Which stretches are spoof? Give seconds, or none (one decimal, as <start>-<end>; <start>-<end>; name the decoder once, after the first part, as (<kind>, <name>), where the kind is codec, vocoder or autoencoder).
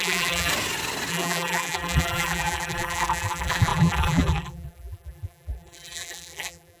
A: 0.0-0.5 (vocoder, BigVGAN v2); 1.1-6.8